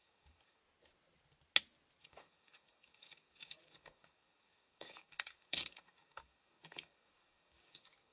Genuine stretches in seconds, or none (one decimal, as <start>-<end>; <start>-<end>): 0.6-2.0